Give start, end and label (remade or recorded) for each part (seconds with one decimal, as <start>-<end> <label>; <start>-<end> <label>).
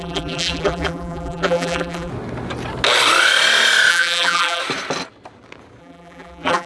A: 0.0-2.1 remade; 2.1-3.9 recorded; 3.9-4.6 remade; 4.6-5.8 recorded; 5.8-6.7 remade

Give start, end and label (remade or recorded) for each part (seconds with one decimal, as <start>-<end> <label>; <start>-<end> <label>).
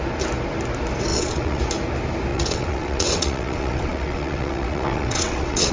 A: 0.0-1.1 recorded; 1.1-1.6 remade; 1.6-2.3 recorded; 2.3-5.7 remade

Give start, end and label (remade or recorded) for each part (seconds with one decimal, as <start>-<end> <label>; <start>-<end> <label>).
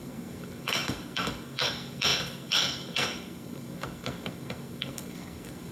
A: 0.0-5.7 remade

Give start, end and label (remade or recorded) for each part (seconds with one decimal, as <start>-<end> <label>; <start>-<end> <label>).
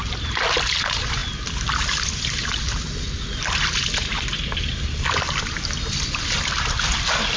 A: 0.0-7.4 recorded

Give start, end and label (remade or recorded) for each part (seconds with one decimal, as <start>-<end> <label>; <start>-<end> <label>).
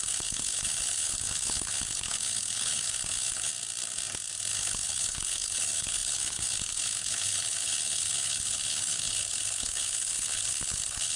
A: 0.0-3.5 remade; 3.5-4.5 recorded; 4.5-11.2 remade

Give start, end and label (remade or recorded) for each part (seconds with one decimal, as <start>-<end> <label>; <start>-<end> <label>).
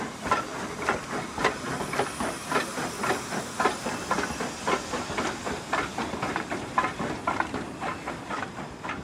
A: 0.0-9.0 recorded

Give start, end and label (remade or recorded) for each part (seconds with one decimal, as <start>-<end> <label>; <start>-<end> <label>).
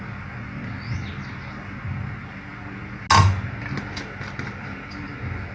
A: 0.0-5.5 recorded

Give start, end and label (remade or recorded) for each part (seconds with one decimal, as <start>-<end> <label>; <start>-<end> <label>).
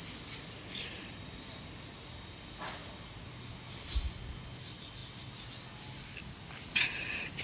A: 0.0-7.4 recorded